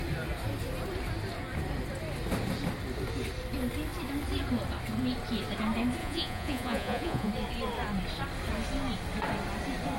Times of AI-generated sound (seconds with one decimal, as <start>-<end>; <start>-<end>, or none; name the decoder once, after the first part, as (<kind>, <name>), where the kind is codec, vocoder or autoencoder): 6.0-7.3 (vocoder, Vocos)